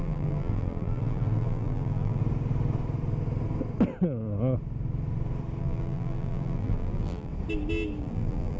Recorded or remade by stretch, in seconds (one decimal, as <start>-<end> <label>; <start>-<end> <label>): 0.0-2.2 remade; 2.2-5.6 recorded; 5.6-7.3 remade; 7.3-8.0 recorded; 8.0-8.6 remade